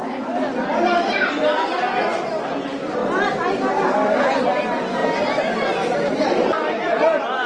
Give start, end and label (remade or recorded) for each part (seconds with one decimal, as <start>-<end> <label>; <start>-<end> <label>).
0.0-7.5 recorded